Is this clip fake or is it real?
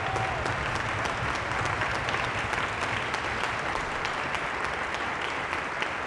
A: real